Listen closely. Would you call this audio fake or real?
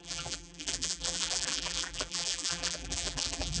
fake